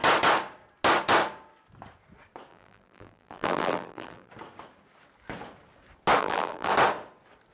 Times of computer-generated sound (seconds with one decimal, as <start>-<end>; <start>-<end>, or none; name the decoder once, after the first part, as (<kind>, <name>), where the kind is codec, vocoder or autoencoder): 2.5-4.3 (vocoder, BigVGAN v2); 6.2-6.7